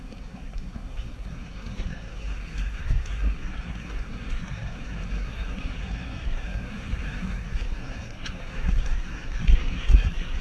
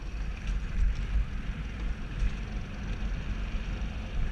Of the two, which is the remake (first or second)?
first